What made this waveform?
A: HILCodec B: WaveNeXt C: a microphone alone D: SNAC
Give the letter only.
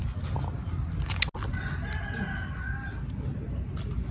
C